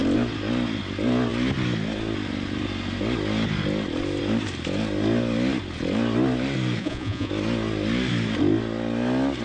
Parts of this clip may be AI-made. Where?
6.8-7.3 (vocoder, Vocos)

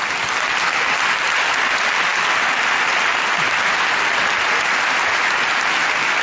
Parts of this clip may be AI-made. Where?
none

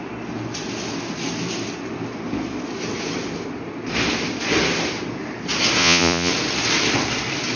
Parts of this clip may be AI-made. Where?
5.8-6.3 (vocoder, Vocos)

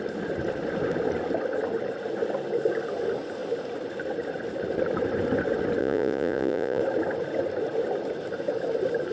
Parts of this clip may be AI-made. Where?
5.8-6.8 (vocoder, Vocos)